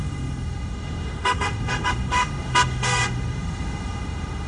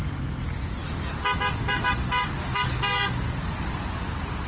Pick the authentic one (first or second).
second